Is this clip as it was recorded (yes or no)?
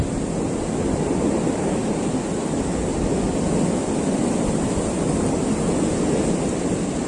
yes